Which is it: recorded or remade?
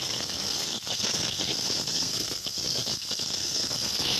remade